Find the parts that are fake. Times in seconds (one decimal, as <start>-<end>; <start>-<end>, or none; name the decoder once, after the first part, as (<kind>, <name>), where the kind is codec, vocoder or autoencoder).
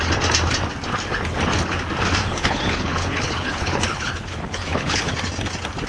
2.2-5.1 (codec, HILCodec)